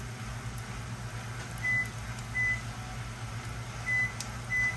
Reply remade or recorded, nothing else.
recorded